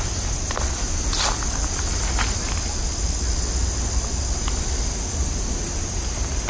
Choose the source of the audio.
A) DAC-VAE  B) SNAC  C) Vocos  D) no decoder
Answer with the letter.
D